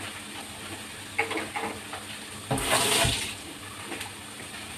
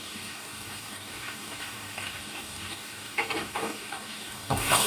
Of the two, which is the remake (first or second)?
second